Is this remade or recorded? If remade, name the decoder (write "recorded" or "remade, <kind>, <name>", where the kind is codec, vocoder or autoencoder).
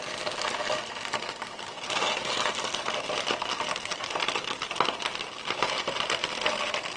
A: recorded